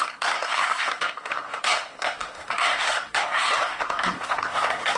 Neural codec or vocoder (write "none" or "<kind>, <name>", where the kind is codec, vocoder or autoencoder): codec, SNAC